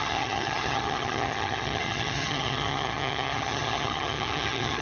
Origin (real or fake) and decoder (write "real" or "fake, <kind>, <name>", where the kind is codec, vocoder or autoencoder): fake, vocoder, HiFi-GAN